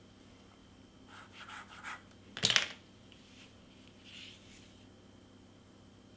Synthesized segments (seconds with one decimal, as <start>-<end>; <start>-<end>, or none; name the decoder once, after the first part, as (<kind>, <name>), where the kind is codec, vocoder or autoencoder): none